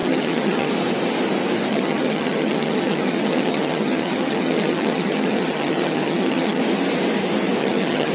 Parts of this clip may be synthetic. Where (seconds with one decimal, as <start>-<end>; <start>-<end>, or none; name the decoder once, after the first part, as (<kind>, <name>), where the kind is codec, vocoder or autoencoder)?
0.0-0.7 (vocoder, HiFi-GAN); 1.7-6.6; 7.6-8.1